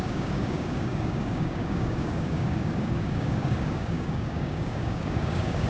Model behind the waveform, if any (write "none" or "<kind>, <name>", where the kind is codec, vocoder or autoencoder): codec, DAC